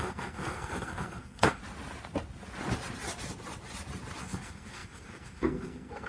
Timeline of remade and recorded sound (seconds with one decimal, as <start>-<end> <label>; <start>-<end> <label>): 0.0-1.6 remade; 1.6-4.2 recorded; 4.2-6.1 remade